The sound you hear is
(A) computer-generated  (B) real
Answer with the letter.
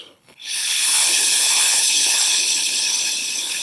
A